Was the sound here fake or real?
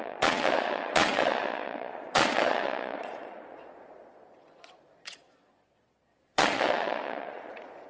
fake